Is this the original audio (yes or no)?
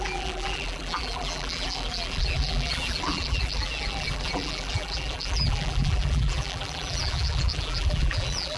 no